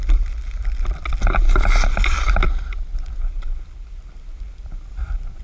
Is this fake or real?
real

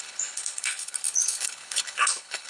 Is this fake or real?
fake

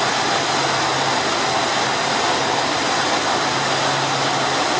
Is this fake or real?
real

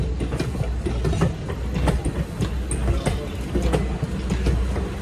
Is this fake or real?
real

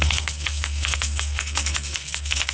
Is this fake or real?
fake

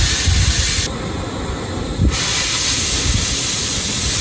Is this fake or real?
real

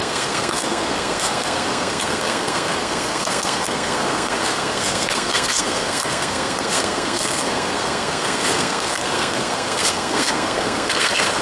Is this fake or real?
fake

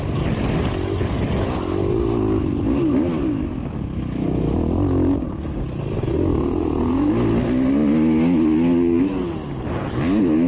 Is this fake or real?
real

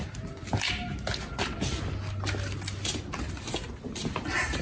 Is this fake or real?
real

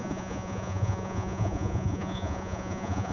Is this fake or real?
fake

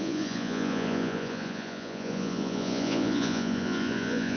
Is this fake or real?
fake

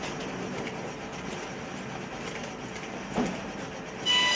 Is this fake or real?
real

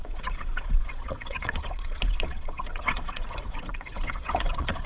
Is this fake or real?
fake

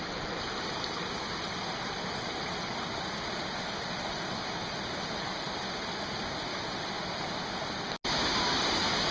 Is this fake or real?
real